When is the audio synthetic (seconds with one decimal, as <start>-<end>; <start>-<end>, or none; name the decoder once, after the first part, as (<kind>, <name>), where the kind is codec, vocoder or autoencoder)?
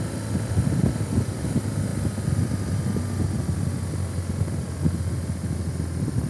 none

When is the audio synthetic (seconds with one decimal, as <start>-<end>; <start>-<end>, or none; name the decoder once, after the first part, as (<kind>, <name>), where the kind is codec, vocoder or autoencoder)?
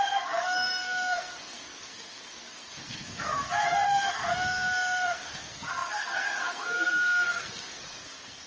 0.0-8.5 (codec, SNAC)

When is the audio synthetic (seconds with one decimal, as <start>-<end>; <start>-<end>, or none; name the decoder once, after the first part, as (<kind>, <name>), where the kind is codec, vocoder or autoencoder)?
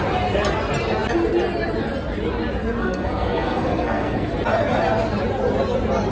2.8-4.3 (codec, SNAC)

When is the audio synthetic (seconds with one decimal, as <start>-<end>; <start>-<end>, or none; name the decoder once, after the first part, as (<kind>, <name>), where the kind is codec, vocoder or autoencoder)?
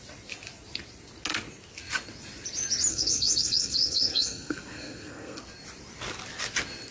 2.9-5.4 (codec, SNAC)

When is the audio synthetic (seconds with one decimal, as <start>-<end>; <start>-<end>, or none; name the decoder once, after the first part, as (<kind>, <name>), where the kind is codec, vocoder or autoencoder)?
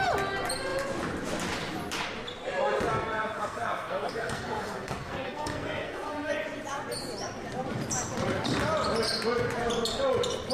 2.9-6.3 (codec, SNAC)